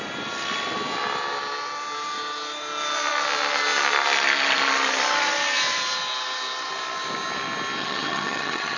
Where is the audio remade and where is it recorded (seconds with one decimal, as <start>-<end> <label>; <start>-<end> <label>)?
0.0-7.8 recorded; 7.8-8.8 remade

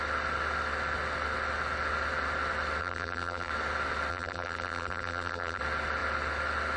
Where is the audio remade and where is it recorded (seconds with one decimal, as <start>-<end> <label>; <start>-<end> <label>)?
0.0-2.8 recorded; 2.8-3.5 remade; 3.5-4.1 recorded; 4.1-5.6 remade; 5.6-6.8 recorded

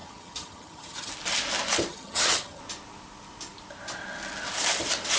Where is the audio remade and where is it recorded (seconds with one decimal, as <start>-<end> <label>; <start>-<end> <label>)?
0.0-1.1 remade; 1.1-1.9 recorded; 1.9-2.6 remade; 2.6-5.2 recorded

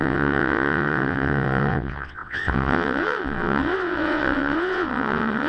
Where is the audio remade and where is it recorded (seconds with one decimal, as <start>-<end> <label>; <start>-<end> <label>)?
0.0-5.5 remade

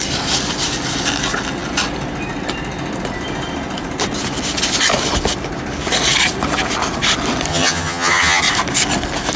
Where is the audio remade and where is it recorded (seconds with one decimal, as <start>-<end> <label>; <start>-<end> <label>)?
0.0-7.5 recorded; 7.5-8.4 remade; 8.4-9.4 recorded